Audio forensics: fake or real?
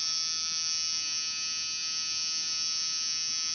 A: real